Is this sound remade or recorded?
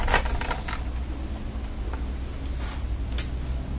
recorded